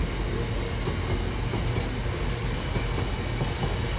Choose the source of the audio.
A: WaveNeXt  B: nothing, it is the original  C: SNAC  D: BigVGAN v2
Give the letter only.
B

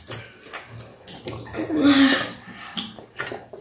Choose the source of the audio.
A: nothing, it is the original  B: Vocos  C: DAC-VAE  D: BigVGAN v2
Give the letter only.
A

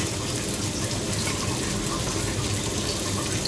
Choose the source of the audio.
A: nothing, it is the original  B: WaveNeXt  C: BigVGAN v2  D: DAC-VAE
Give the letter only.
A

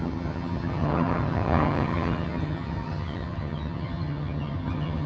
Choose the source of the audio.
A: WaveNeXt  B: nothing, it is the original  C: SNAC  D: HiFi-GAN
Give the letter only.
D